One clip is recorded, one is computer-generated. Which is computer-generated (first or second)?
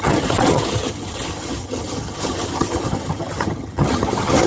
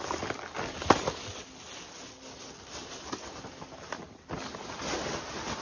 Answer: first